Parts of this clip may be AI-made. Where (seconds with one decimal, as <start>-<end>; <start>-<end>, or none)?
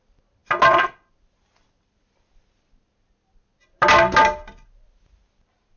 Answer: none